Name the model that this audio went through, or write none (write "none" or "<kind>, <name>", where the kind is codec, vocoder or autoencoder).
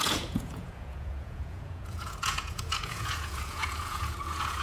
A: vocoder, Vocos